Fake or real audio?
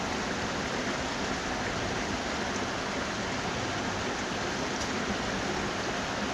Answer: real